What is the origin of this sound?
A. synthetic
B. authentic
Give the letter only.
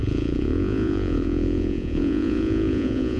A